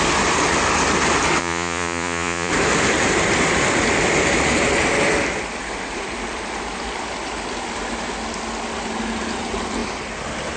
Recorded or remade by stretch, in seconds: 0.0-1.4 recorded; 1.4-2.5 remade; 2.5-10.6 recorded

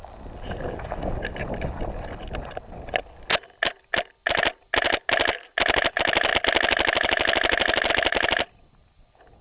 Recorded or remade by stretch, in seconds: 0.0-9.4 recorded

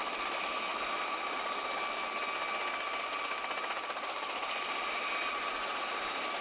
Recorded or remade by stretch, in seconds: 0.0-6.4 recorded

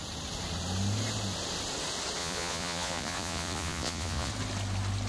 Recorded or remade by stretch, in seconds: 0.0-2.2 recorded; 2.2-4.3 remade; 4.3-5.1 recorded

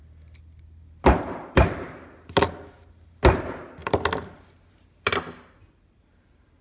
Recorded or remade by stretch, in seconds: 0.0-6.6 recorded

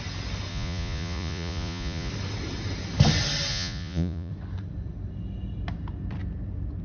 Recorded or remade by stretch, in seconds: 0.0-0.5 recorded; 0.5-2.1 remade; 2.1-3.5 recorded; 3.5-4.3 remade; 4.3-6.8 recorded